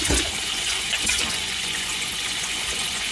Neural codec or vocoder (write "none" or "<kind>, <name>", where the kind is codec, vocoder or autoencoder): vocoder, Vocos